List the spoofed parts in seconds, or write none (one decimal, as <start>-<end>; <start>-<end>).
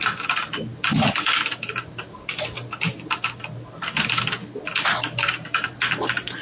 none